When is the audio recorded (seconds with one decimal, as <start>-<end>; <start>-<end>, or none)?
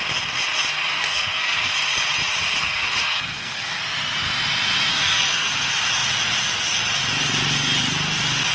0.0-0.9; 1.7-2.6; 3.8-4.9; 5.5-8.5